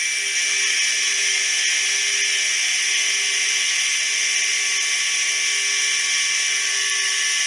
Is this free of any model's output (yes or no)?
yes